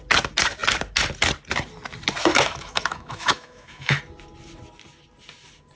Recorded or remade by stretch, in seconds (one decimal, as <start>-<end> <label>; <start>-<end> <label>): 0.0-2.3 recorded; 2.3-4.0 remade; 4.0-5.8 recorded